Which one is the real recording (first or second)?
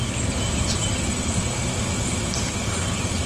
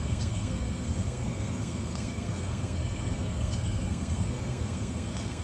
first